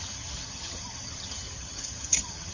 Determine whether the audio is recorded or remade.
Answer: remade